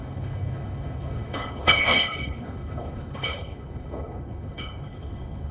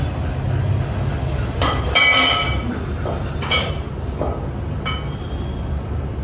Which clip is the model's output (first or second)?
first